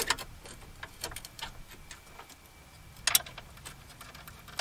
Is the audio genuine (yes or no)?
yes